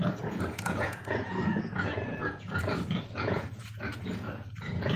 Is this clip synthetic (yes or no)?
yes